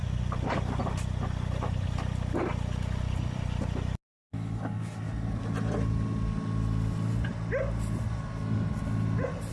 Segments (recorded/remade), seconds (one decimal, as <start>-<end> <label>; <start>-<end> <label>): 0.0-9.5 recorded